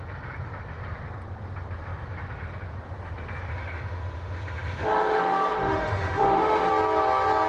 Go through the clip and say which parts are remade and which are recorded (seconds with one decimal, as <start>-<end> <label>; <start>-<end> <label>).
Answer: 0.0-3.5 recorded; 3.5-6.7 remade; 6.7-7.5 recorded